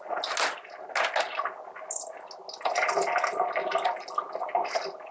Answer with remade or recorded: recorded